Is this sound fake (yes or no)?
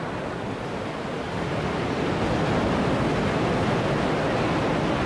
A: no